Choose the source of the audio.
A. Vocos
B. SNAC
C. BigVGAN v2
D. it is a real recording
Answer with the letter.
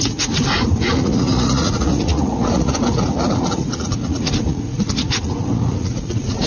A